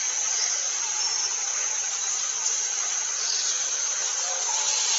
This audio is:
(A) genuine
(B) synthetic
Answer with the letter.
A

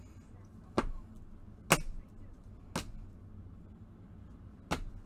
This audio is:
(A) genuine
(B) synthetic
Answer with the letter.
A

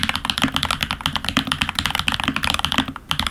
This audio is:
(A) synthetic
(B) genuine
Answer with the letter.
B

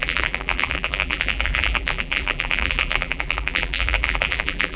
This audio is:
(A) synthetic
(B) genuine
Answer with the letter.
A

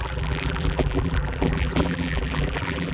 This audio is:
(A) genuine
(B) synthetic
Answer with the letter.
B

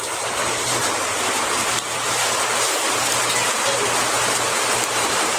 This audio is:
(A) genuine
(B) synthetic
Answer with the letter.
B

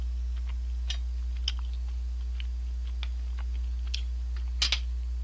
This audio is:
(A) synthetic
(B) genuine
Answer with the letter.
B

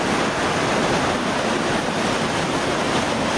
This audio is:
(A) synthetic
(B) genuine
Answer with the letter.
B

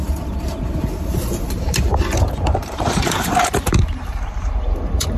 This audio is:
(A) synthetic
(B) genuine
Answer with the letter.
A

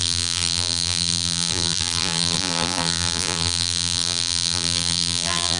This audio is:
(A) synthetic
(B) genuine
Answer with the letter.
A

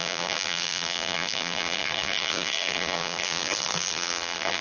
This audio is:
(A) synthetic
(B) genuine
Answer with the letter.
A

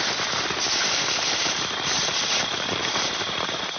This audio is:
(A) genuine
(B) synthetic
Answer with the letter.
B